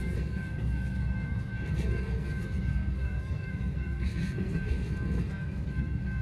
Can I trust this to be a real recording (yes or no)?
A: no